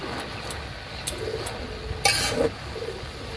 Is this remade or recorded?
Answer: recorded